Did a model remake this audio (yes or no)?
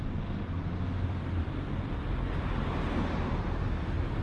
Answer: no